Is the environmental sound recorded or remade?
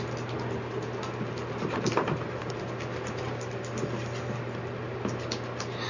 recorded